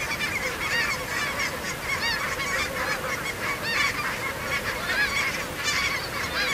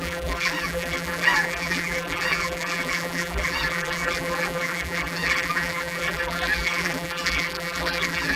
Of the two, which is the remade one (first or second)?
second